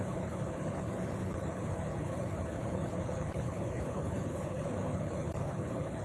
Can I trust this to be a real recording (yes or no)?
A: no